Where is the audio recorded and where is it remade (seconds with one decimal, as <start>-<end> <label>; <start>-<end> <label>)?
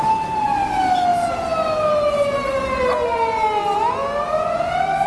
0.0-5.1 recorded